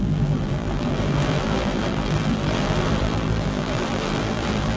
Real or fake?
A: fake